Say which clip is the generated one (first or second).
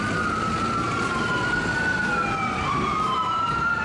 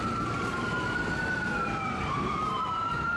second